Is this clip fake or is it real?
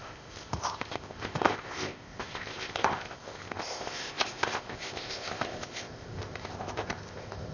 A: fake